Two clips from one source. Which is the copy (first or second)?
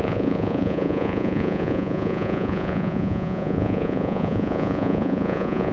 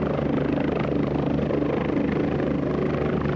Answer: first